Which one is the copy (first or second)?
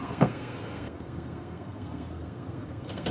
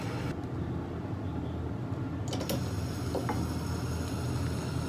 first